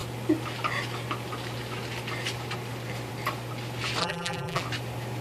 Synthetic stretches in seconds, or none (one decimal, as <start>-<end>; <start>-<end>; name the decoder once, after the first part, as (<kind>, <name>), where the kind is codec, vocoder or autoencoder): 4.0-4.6 (vocoder, BigVGAN v2)

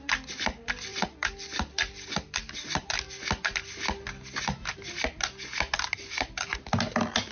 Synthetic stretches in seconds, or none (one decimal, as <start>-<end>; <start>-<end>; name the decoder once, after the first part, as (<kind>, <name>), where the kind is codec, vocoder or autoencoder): 0.9-1.9 (vocoder, BigVGAN v2)

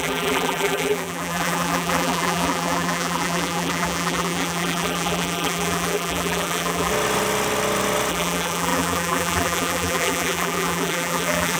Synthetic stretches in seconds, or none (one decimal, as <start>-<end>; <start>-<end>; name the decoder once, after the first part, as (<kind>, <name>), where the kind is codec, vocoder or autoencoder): 0.0-6.9 (vocoder, BigVGAN v2); 8.1-11.6

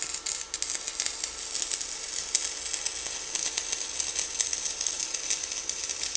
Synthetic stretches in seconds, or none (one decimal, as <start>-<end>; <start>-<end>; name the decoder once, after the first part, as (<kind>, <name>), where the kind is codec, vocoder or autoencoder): none

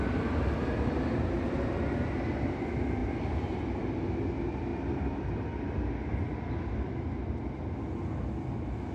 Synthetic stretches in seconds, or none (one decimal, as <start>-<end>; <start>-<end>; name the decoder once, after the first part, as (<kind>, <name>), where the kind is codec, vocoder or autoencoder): 3.0-3.6 (vocoder, BigVGAN v2)